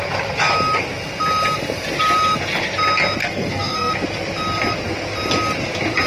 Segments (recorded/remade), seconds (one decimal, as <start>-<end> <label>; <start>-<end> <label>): 0.0-3.2 recorded; 3.2-3.9 remade; 3.9-6.1 recorded